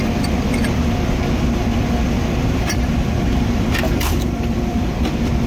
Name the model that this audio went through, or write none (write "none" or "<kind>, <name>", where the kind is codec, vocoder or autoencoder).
vocoder, BigVGAN v2